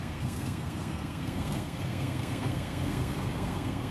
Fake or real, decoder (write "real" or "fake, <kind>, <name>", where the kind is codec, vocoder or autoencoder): fake, codec, SNAC